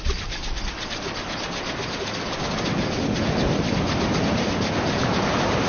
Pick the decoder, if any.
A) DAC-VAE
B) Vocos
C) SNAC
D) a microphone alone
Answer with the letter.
D